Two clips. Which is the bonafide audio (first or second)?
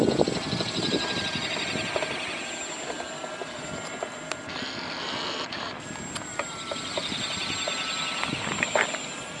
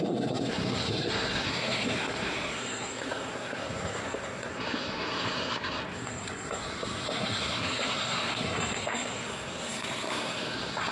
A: first